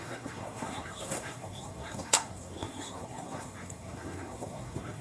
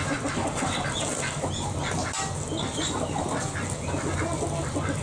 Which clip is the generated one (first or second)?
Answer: first